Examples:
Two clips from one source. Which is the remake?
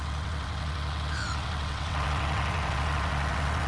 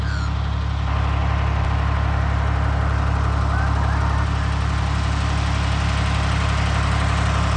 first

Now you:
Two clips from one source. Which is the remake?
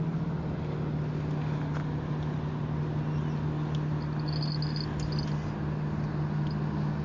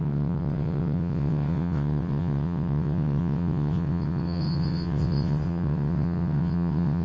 second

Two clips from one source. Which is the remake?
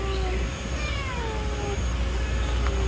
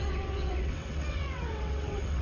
second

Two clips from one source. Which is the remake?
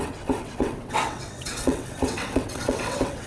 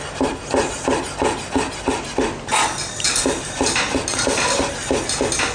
first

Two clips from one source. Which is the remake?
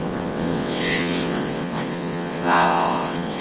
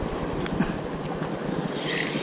first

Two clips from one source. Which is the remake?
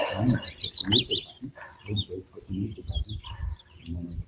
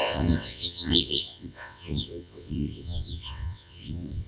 second